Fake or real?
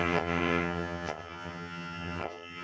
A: fake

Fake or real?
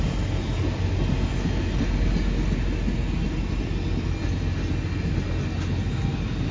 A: real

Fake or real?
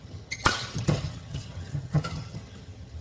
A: fake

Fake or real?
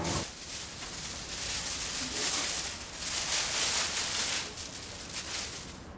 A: real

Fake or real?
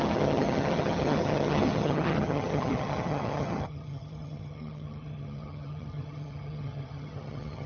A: fake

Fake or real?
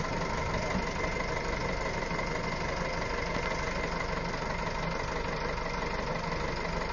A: real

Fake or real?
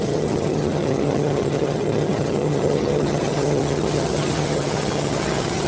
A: fake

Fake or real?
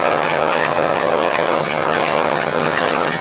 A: fake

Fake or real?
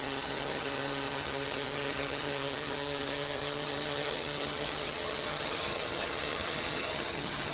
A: fake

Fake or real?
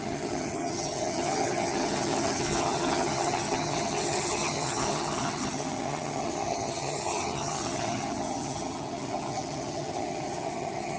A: fake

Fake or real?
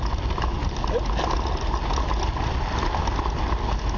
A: real